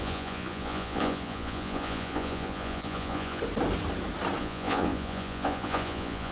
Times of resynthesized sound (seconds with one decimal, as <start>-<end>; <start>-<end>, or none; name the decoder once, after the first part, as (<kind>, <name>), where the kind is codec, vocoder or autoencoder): 0.0-3.4 (vocoder, Vocos); 4.4-6.3